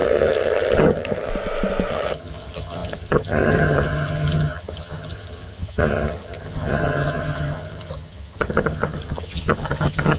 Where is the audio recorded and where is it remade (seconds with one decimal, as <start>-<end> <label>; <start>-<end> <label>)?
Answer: 0.0-1.3 remade; 1.3-1.9 recorded; 1.9-10.2 remade